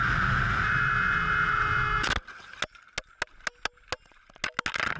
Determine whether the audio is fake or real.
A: real